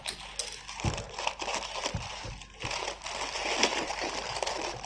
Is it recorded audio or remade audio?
recorded